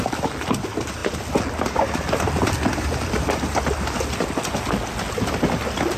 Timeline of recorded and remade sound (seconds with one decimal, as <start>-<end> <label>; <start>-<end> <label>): 0.0-6.0 recorded

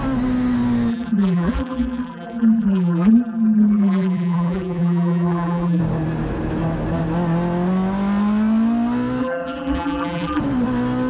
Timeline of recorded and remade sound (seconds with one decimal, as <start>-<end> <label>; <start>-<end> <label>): 0.0-0.9 recorded; 0.9-5.8 remade; 5.8-9.2 recorded; 9.2-10.4 remade; 10.4-11.1 recorded

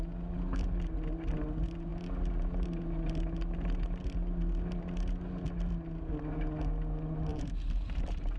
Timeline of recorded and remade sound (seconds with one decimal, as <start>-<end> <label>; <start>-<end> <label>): 0.0-7.3 recorded; 7.3-8.4 remade